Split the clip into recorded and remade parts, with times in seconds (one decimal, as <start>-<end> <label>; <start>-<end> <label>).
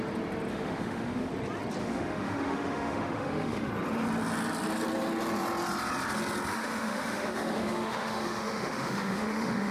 0.0-0.5 recorded; 0.5-1.3 remade; 1.3-1.8 recorded; 1.8-3.7 remade; 3.7-6.5 recorded; 6.5-9.7 remade